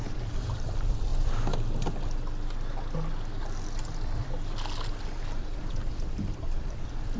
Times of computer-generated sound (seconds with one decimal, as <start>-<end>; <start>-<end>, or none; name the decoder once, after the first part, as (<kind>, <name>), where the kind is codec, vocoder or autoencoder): 0.0-1.1 (vocoder, BigVGAN v2); 5.2-7.2